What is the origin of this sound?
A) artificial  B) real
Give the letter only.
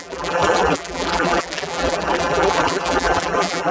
A